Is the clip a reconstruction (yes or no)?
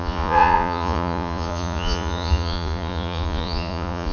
yes